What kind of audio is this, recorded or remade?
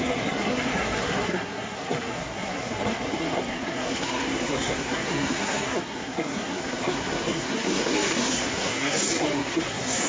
remade